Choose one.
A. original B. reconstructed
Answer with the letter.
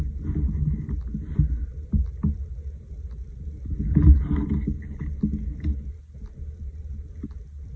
A